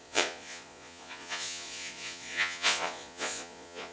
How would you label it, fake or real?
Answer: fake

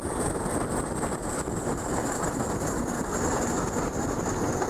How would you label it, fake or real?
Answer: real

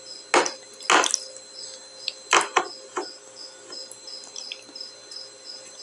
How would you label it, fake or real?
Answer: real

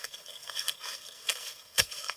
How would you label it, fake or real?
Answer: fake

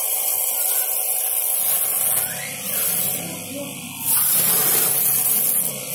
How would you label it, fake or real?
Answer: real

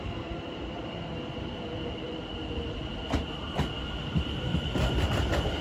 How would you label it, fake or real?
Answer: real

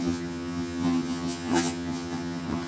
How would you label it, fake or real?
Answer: fake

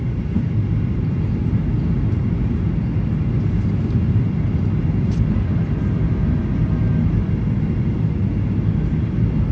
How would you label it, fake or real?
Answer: real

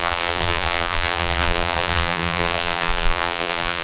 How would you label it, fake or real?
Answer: fake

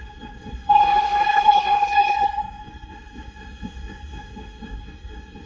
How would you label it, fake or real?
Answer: fake